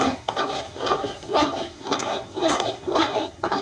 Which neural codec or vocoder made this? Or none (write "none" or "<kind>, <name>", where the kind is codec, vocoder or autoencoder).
codec, SNAC